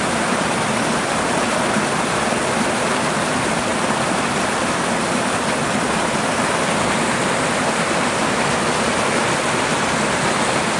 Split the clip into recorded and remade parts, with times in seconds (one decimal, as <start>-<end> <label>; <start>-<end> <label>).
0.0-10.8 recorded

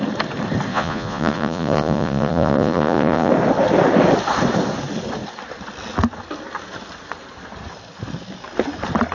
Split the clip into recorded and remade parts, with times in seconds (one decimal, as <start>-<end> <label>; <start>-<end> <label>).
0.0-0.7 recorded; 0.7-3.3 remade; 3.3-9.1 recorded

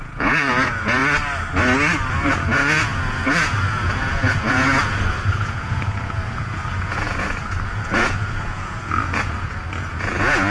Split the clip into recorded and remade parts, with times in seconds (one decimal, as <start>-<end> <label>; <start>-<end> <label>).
0.0-1.0 remade; 1.0-2.1 recorded; 2.1-10.5 remade

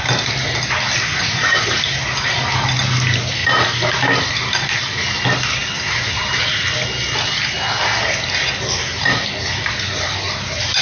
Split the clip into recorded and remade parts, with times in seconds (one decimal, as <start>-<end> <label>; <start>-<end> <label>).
0.0-1.1 recorded; 1.1-1.8 remade; 1.8-10.8 recorded

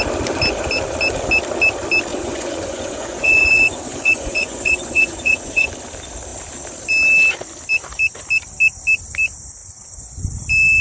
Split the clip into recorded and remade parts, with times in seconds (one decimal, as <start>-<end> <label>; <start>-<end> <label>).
0.0-2.1 recorded; 2.1-5.7 remade; 5.7-9.6 recorded; 9.6-10.3 remade; 10.3-10.8 recorded

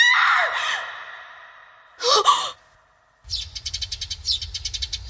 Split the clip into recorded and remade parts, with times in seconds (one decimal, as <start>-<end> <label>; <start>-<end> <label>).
0.0-5.1 recorded